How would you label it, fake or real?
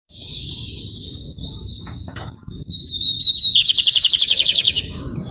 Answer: fake